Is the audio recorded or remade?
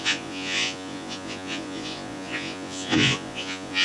remade